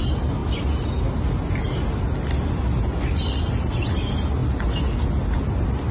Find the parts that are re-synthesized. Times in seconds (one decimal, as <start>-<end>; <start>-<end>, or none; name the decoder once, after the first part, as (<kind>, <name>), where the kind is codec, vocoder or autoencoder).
none